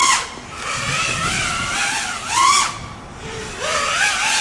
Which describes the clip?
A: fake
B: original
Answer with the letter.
B